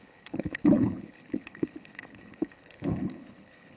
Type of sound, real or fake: fake